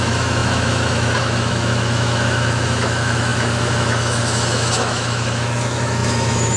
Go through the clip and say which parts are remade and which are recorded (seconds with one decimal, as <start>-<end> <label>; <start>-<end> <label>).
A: 0.0-6.6 remade